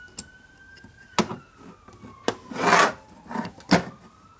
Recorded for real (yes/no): yes